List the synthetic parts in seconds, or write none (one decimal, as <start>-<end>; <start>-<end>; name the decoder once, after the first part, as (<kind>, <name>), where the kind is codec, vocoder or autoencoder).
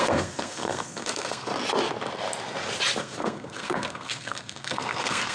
0.0-1.5 (codec, SNAC); 3.0-5.3